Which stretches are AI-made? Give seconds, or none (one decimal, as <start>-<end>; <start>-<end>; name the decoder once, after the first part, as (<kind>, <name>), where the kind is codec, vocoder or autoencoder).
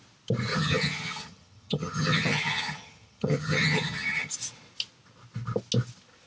0.5-4.3 (vocoder, HiFi-GAN)